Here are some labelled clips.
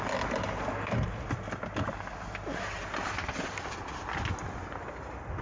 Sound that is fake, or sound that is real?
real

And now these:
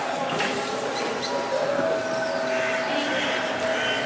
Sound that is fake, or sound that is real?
real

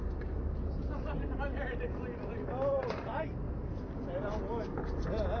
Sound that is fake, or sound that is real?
real